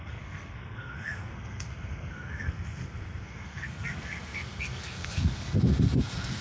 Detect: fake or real fake